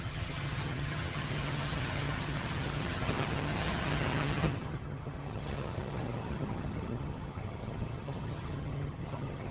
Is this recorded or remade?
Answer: remade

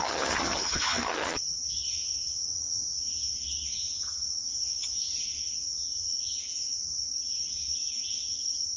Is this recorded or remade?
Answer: remade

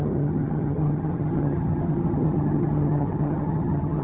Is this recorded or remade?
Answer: remade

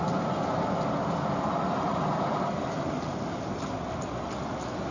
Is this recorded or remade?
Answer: recorded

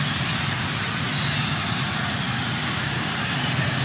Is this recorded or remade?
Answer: recorded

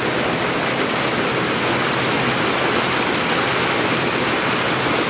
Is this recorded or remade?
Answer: recorded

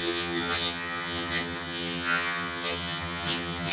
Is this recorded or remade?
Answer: remade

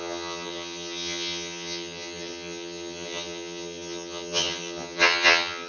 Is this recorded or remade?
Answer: remade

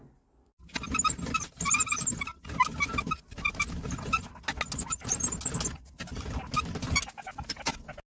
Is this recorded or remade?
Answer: recorded